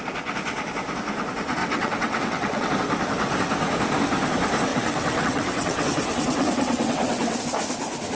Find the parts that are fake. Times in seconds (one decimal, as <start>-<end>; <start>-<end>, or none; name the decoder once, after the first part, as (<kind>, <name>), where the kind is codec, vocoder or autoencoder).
1.6-2.7 (vocoder, WaveNeXt); 4.7-7.4